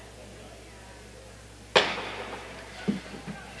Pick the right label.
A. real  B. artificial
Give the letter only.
A